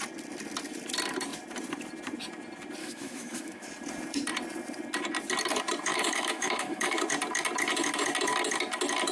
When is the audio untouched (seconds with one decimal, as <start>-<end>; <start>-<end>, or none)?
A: 0.0-2.8; 3.7-5.9; 7.0-9.1